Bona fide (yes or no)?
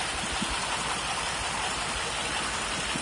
no